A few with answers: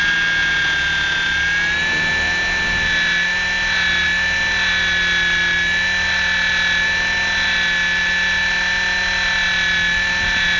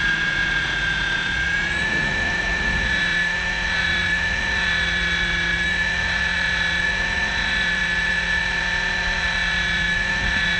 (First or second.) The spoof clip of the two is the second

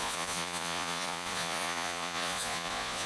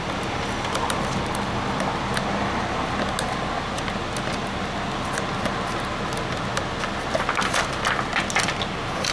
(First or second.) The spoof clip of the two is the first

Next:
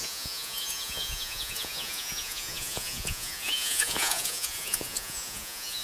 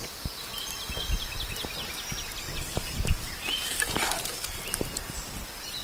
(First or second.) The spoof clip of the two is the first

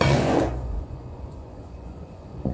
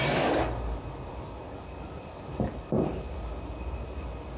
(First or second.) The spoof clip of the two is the first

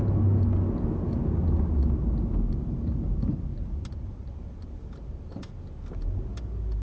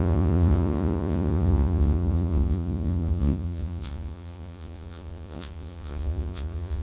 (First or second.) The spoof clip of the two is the second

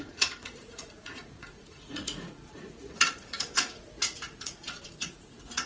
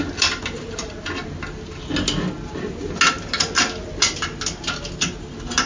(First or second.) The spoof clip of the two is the first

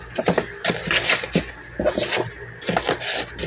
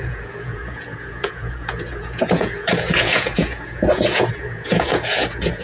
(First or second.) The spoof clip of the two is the second